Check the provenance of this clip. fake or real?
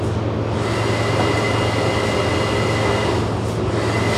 real